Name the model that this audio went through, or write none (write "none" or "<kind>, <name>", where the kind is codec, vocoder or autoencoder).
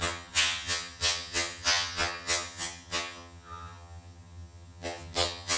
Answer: vocoder, HiFi-GAN